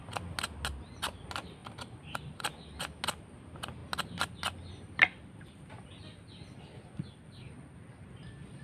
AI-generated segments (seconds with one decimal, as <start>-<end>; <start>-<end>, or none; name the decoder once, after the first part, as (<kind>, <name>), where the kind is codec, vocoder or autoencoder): 1.6-2.4 (vocoder, BigVGAN v2)